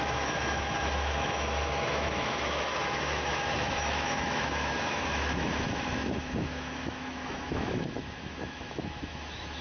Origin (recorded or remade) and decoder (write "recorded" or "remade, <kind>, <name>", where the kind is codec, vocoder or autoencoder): remade, autoencoder, DAC-VAE